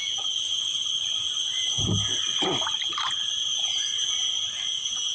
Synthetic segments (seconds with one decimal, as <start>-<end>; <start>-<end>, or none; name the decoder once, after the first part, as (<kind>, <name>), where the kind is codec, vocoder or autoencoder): none